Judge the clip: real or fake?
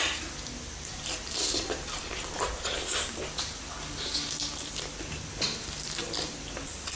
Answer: real